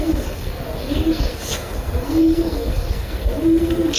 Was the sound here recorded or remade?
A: remade